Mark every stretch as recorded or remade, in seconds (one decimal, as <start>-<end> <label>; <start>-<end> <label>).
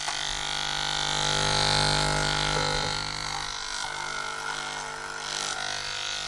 0.0-6.3 recorded